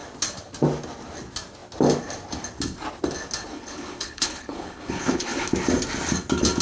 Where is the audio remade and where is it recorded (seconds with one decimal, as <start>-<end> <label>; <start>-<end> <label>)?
0.0-3.4 recorded; 3.4-5.5 remade; 5.5-6.6 recorded